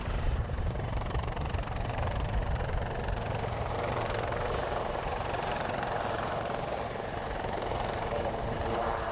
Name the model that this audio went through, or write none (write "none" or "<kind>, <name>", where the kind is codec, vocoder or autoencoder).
vocoder, BigVGAN v2